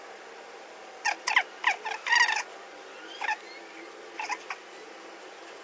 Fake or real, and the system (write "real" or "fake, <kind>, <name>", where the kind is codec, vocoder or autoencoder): real